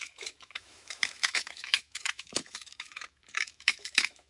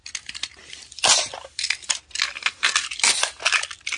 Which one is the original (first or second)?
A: second